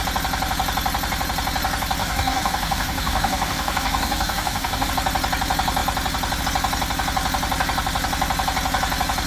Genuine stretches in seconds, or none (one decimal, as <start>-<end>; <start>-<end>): 0.0-2.0; 4.9-9.3